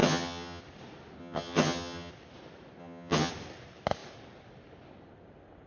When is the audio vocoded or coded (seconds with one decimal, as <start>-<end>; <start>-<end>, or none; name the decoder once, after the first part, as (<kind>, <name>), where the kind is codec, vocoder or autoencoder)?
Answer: 0.0-0.6 (vocoder, HiFi-GAN); 1.2-2.1; 2.8-3.3